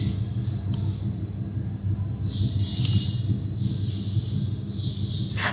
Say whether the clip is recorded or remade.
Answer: recorded